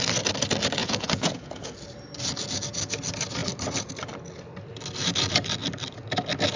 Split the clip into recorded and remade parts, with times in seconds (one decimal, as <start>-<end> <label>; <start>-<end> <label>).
0.0-0.8 recorded; 0.8-1.7 remade; 1.7-6.6 recorded